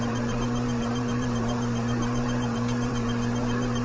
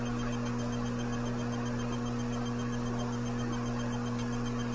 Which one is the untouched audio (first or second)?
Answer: second